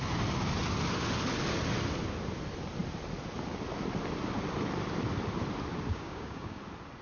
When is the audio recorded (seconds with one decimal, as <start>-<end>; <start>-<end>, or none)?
0.0-5.9; 6.6-7.0

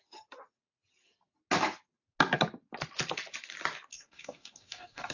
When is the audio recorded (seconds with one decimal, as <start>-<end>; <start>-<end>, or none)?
0.0-3.9